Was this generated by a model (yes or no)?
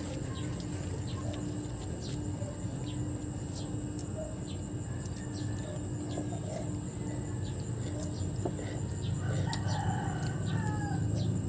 no